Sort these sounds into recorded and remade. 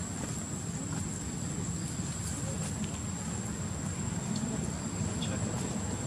recorded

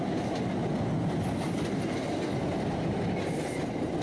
recorded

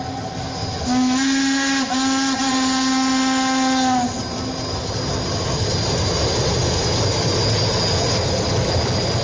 recorded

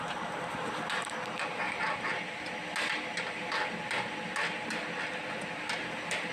recorded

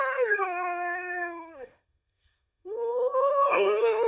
remade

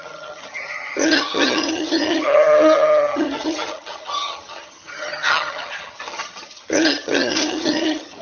remade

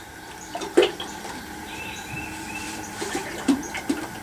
remade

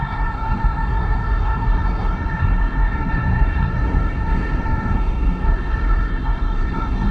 remade